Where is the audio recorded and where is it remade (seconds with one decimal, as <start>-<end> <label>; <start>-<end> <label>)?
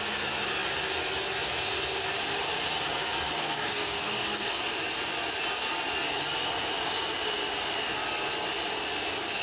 0.0-3.4 recorded; 3.4-4.6 remade; 4.6-9.4 recorded